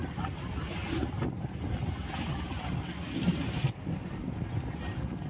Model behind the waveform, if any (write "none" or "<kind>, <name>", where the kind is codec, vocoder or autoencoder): none